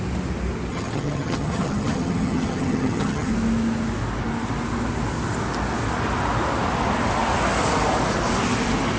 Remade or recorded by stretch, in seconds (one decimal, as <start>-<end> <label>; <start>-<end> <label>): 0.0-0.7 recorded; 0.7-3.3 remade; 3.3-9.0 recorded